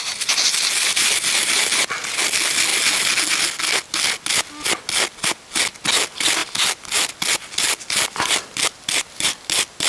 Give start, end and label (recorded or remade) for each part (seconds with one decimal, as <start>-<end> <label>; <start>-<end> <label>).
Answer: 0.0-9.9 recorded